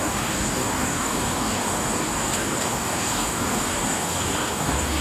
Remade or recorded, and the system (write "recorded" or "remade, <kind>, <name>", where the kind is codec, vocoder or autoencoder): remade, codec, DAC